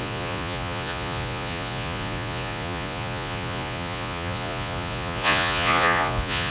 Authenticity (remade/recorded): remade